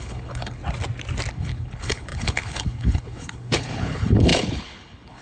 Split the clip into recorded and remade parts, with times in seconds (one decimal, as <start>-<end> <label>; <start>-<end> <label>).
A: 0.0-0.6 remade; 0.6-1.3 recorded; 1.3-5.2 remade

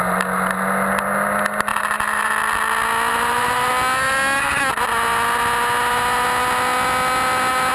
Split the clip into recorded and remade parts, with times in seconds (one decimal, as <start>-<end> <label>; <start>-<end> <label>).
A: 0.0-1.7 recorded; 1.7-2.3 remade; 2.3-3.1 recorded; 3.1-3.7 remade; 3.7-7.7 recorded